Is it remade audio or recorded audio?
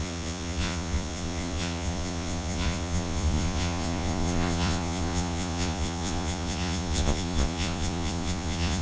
remade